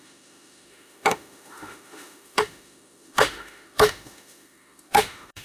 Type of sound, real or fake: fake